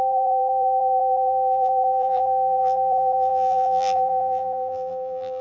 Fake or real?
fake